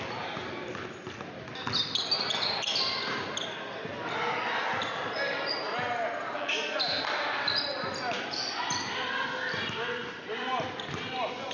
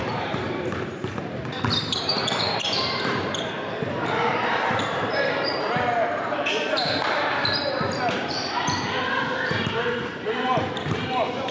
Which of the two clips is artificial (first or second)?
second